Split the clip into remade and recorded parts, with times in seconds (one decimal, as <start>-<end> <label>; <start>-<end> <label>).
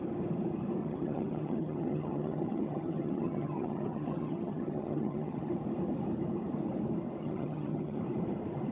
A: 0.0-0.8 recorded; 0.8-5.5 remade; 5.5-7.2 recorded; 7.2-8.0 remade; 8.0-8.7 recorded